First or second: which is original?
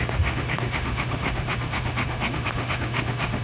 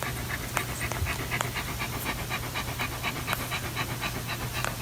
second